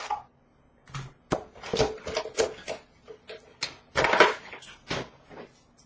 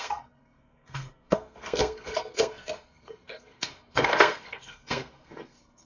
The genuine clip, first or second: first